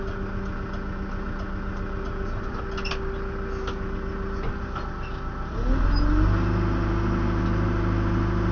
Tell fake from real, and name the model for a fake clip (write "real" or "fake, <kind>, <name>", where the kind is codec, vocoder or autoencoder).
real